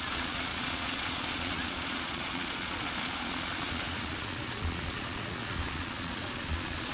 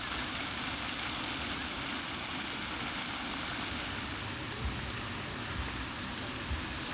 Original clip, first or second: second